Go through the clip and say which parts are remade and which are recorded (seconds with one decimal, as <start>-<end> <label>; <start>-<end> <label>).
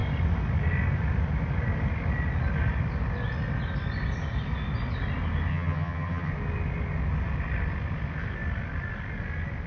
0.0-5.5 recorded; 5.5-6.3 remade; 6.3-9.7 recorded